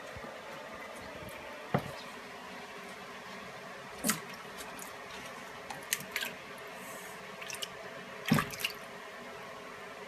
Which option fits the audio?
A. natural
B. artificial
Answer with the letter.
A